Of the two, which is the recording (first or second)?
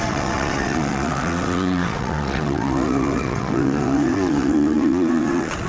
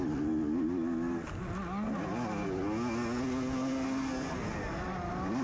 second